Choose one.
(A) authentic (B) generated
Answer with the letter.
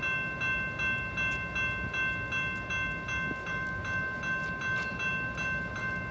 A